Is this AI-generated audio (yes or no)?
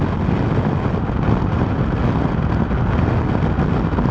no